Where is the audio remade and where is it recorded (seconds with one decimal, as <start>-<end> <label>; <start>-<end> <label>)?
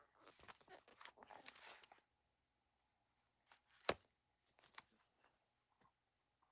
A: 0.0-0.9 remade; 0.9-1.4 recorded; 1.4-6.5 remade